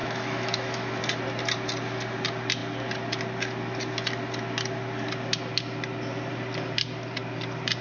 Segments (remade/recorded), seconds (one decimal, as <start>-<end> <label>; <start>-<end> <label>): 0.0-1.0 remade; 1.0-7.8 recorded